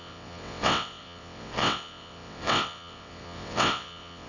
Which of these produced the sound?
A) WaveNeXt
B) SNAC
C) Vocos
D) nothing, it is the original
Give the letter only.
A